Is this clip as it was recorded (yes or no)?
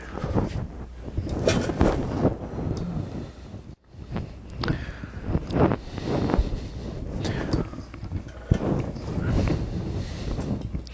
yes